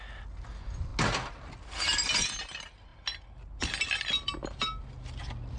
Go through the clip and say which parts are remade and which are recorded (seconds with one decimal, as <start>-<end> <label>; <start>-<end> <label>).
0.0-5.6 recorded